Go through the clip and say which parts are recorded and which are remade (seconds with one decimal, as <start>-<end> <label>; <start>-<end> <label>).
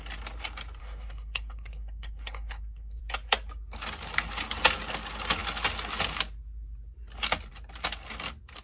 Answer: 0.0-0.8 recorded; 0.8-3.0 remade; 3.0-8.6 recorded